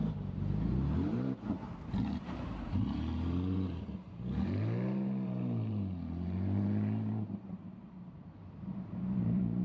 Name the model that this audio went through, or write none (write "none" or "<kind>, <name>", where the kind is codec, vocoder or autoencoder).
vocoder, BigVGAN v2